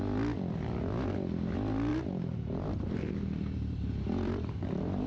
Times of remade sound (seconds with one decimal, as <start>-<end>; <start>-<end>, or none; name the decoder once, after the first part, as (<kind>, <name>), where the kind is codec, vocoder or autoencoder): 1.9-5.1 (vocoder, BigVGAN v2)